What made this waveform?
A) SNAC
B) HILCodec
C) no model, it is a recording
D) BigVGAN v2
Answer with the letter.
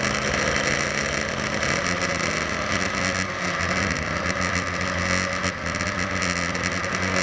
C